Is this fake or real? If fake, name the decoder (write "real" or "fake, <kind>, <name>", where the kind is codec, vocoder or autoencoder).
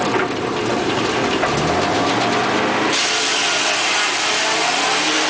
real